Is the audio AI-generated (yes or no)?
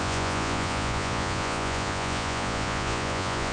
yes